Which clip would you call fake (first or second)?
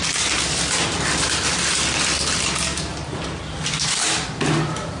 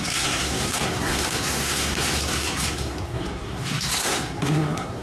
second